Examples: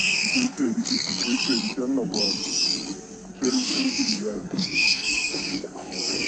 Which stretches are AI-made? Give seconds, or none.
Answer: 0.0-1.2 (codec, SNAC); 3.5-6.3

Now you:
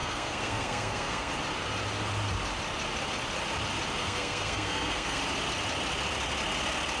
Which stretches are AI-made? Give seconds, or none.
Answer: 0.0-1.3 (codec, SNAC); 4.0-5.2

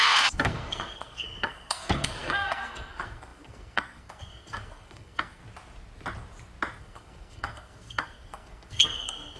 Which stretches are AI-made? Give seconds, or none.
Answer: 0.0-5.4 (codec, SNAC); 6.8-9.4